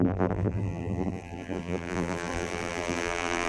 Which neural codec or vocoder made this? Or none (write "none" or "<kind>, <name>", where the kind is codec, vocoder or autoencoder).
vocoder, BigVGAN v2